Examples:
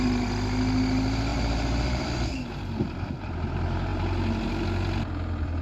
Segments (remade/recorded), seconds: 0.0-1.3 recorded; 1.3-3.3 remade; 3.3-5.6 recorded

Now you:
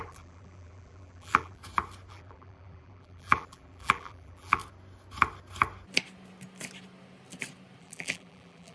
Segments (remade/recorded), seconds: 0.0-1.6 remade; 1.6-2.1 recorded; 2.1-4.6 remade; 4.6-7.8 recorded; 7.8-8.7 remade

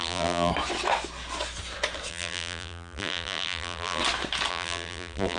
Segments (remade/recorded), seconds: 0.0-0.5 remade; 0.5-2.1 recorded; 2.1-4.0 remade; 4.0-4.5 recorded; 4.5-5.4 remade

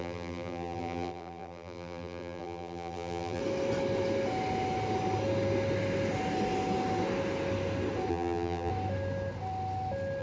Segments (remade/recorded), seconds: 0.0-3.4 remade; 3.4-8.1 recorded; 8.1-8.7 remade; 8.7-10.2 recorded

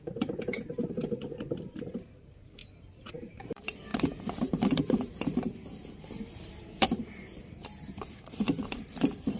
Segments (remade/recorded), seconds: 0.0-2.6 remade; 2.6-3.1 recorded; 3.1-9.4 remade

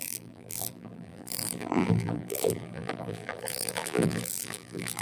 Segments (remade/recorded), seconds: 0.0-5.0 remade

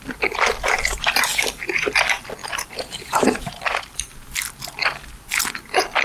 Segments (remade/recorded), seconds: 0.0-1.3 recorded; 1.3-1.9 remade; 1.9-2.4 recorded; 2.4-3.8 remade; 3.8-6.0 recorded

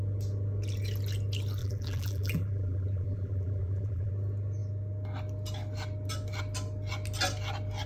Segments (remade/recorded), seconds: 0.0-1.6 recorded; 1.6-4.1 remade; 4.1-7.9 recorded